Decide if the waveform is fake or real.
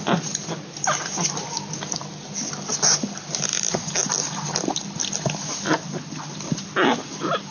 real